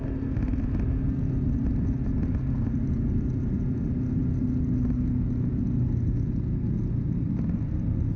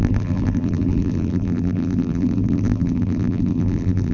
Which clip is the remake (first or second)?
second